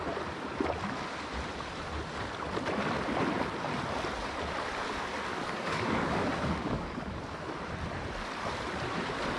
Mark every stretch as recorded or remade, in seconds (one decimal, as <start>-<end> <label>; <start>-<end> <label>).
0.0-5.3 recorded; 5.3-7.2 remade; 7.2-9.4 recorded